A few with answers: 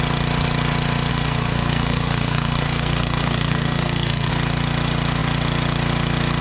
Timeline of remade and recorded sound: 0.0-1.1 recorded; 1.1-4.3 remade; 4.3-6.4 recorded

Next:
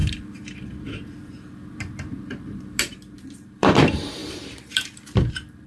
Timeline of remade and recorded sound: 0.0-5.7 remade

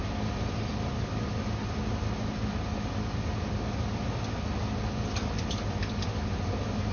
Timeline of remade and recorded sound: 0.0-6.9 recorded

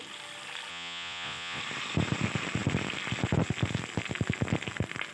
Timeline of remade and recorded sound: 0.0-0.7 recorded; 0.7-1.6 remade; 1.6-5.1 recorded

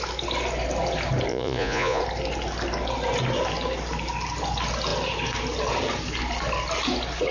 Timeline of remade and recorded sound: 0.0-1.3 recorded; 1.3-2.0 remade; 2.0-7.3 recorded

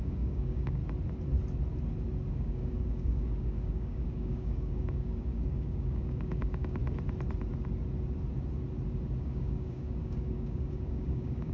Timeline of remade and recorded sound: 0.0-0.8 remade; 0.8-2.3 recorded; 2.3-6.8 remade; 6.8-9.2 recorded; 9.2-11.5 remade